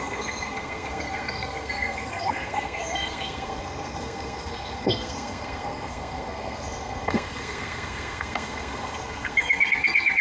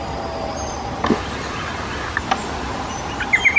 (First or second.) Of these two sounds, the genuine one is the second